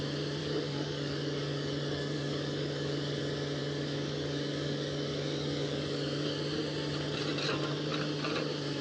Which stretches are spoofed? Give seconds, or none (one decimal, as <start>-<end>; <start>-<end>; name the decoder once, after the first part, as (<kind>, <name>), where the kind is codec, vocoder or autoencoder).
0.4-3.2 (codec, DAC); 3.6-6.4